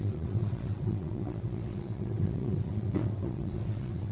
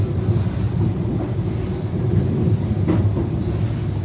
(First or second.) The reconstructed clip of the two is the first